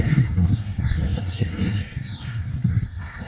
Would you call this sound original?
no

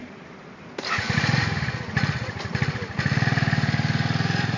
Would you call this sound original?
no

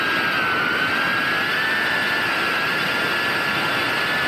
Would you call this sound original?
yes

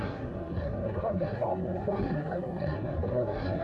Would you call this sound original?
no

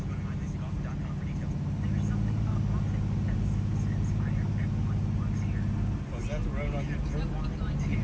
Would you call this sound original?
yes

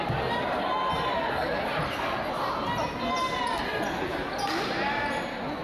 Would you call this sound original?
yes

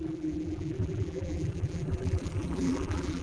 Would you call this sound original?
no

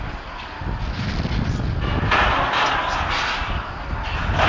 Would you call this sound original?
yes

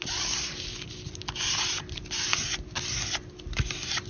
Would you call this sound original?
yes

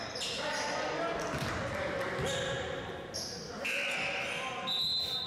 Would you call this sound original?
yes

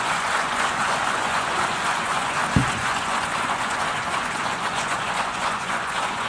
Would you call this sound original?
no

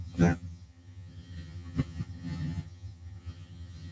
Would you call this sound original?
no